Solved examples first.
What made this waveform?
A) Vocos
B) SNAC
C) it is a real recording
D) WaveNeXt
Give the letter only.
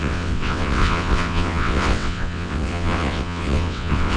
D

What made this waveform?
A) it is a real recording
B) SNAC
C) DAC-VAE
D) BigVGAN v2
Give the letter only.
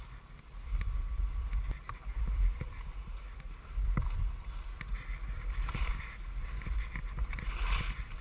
A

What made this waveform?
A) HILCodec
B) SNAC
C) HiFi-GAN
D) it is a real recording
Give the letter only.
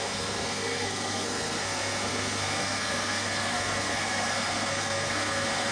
B